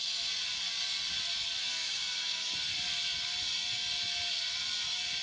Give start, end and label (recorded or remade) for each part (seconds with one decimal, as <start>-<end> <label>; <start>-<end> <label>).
0.0-1.7 recorded; 1.7-2.5 remade; 2.5-5.2 recorded